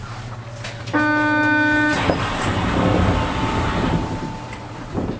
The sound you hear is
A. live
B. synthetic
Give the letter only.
A